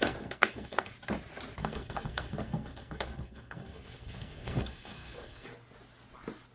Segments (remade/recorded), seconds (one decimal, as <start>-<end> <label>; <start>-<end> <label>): 0.0-0.9 remade; 0.9-1.6 recorded; 1.6-5.5 remade; 5.5-6.5 recorded